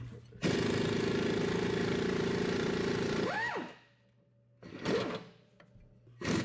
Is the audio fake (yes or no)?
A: no